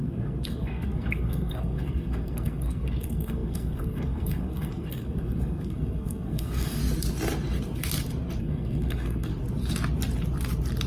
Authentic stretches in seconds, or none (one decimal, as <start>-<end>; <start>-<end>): 6.8-8.4; 9.3-10.9